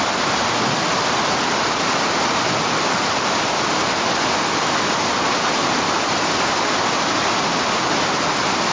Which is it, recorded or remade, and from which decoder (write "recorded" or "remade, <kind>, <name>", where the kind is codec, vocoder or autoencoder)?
recorded